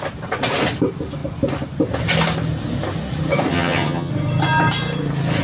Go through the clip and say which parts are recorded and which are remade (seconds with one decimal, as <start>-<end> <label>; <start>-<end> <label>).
0.0-3.5 recorded; 3.5-4.1 remade; 4.1-5.4 recorded